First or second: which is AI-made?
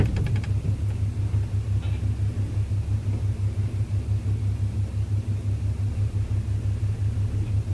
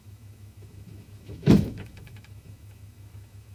second